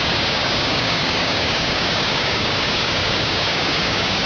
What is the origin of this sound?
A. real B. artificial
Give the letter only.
B